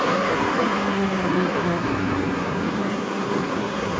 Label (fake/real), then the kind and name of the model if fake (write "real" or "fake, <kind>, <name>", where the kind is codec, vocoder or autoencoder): fake, codec, SNAC